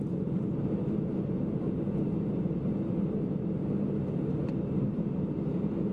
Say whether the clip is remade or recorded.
recorded